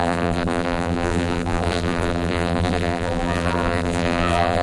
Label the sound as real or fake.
fake